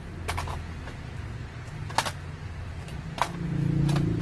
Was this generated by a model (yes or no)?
no